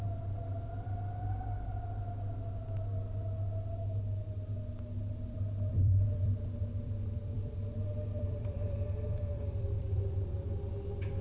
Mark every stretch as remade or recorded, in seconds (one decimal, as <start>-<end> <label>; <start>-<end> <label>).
0.0-5.1 recorded; 5.1-10.0 remade; 10.0-11.2 recorded